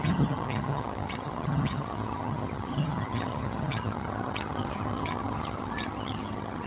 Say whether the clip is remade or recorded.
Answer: remade